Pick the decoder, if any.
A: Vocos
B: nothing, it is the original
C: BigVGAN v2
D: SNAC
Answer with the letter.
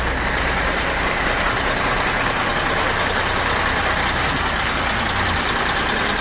C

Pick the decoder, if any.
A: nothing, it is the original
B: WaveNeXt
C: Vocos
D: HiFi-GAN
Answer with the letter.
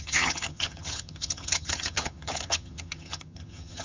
D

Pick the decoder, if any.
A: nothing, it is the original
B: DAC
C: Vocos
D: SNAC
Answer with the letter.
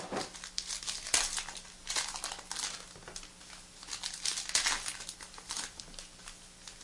A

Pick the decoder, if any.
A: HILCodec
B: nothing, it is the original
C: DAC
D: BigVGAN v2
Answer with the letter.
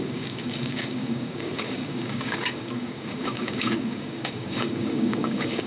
C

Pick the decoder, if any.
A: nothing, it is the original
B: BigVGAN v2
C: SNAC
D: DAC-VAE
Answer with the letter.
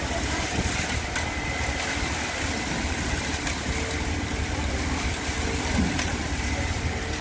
A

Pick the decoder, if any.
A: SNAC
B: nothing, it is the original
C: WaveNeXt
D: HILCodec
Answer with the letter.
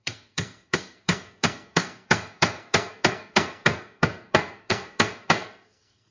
A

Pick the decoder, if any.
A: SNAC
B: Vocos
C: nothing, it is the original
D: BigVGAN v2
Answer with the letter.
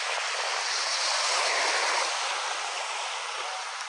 C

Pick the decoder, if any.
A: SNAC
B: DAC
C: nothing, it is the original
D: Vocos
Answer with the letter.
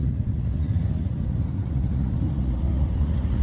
D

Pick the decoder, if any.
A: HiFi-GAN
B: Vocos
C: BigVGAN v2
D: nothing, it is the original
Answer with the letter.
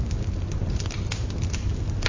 D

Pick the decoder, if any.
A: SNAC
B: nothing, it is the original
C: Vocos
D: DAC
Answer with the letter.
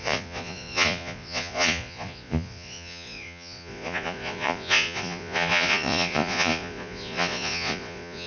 C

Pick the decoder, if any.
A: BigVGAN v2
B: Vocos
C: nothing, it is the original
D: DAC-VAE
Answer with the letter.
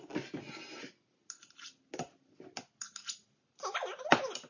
C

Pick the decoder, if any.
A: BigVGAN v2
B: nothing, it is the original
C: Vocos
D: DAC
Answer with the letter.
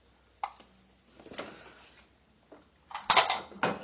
B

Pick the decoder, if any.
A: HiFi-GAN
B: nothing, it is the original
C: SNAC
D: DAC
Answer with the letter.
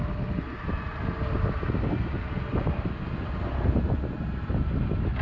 B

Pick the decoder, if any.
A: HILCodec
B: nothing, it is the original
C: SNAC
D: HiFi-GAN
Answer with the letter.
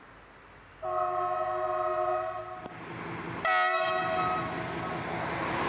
B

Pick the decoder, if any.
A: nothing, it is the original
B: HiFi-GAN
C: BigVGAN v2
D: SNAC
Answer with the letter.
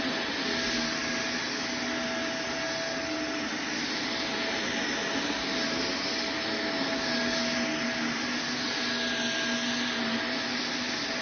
A